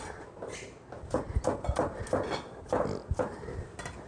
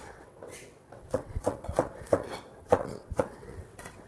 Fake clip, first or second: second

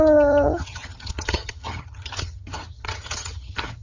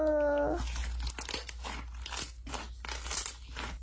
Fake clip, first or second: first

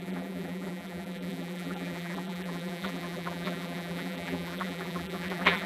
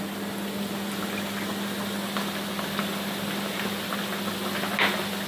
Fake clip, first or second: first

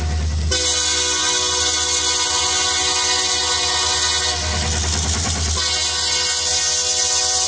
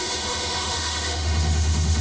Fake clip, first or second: second